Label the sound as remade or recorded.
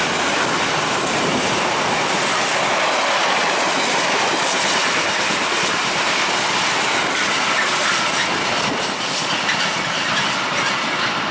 recorded